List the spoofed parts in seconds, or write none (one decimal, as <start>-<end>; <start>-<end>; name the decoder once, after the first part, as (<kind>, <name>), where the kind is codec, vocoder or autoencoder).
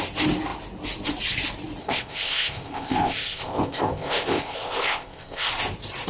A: 1.8-5.5 (codec, ZipCodec)